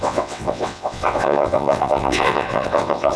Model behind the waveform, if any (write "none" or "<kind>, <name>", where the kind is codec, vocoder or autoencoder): vocoder, WaveNeXt